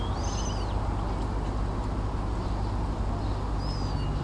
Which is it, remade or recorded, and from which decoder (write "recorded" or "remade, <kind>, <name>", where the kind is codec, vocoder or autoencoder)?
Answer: recorded